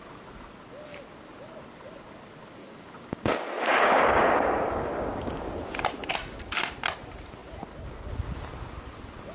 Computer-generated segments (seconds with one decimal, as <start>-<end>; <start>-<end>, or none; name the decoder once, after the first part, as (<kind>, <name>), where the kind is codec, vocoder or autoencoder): 2.6-5.4 (codec, DAC)

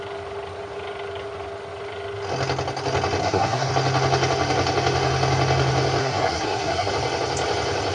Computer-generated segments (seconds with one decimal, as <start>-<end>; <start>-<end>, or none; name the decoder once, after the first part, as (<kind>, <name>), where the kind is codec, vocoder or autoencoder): 3.2-3.7 (codec, SNAC); 6.0-6.9

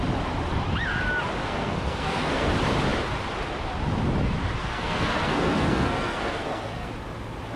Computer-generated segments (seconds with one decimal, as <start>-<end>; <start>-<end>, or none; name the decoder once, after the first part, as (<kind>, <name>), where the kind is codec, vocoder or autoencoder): 1.4-2.5 (codec, SNAC); 4.6-6.9

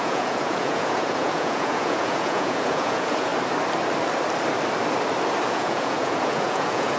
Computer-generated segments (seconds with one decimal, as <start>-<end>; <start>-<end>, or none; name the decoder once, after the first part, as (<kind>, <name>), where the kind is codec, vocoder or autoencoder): 0.0-3.3 (vocoder, Vocos); 5.5-7.0

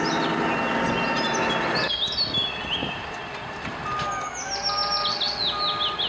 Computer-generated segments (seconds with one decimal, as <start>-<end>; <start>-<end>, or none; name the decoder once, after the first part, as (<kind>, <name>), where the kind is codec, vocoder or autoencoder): 2.8-3.8 (vocoder, BigVGAN v2)